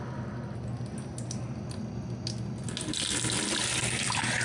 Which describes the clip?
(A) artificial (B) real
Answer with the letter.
B